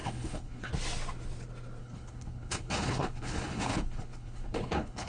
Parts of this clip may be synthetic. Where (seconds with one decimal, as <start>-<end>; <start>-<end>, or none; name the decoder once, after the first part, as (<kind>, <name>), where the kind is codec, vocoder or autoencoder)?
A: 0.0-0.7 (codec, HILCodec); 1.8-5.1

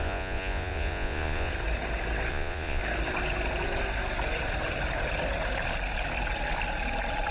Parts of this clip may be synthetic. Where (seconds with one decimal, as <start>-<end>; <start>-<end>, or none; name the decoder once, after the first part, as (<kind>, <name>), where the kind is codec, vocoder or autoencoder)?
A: 0.0-1.5 (vocoder, Vocos); 2.3-2.8

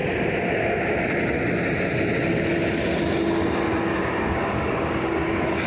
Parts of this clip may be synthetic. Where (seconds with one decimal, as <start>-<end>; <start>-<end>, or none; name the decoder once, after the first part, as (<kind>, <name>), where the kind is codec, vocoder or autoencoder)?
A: 3.9-5.7 (codec, DAC)

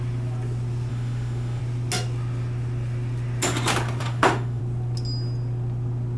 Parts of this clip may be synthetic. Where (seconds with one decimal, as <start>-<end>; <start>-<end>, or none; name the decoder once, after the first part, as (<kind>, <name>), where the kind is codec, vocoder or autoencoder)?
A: 0.9-1.6 (autoencoder, DAC-VAE); 4.0-4.6

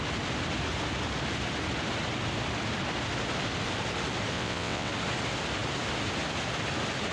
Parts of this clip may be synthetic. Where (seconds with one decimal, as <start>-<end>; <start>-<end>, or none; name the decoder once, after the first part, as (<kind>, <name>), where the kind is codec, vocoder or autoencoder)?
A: 4.3-4.9 (vocoder, WaveNeXt)